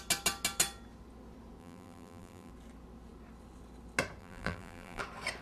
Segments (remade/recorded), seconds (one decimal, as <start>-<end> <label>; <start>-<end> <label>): 0.0-1.6 recorded; 1.6-2.5 remade; 2.5-4.2 recorded; 4.2-5.0 remade; 5.0-5.4 recorded